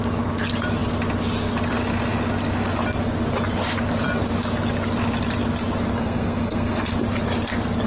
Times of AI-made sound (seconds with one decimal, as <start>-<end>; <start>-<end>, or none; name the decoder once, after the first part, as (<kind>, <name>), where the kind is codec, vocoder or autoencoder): 6.0-6.9 (codec, SNAC)